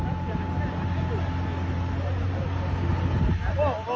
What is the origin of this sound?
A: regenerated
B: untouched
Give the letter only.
B